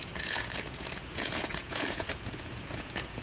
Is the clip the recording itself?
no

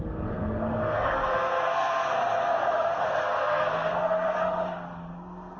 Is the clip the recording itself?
no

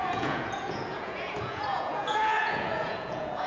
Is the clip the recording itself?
no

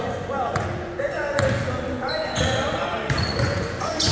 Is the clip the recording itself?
no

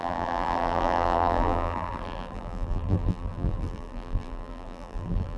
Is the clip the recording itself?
no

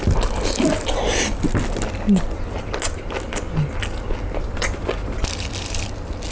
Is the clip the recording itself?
yes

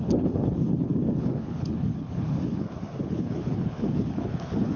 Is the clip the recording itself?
no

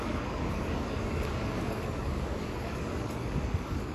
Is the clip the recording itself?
no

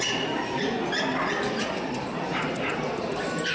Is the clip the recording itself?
no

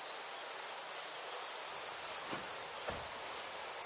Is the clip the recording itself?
yes